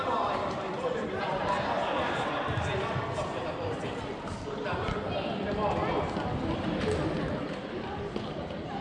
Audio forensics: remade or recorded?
remade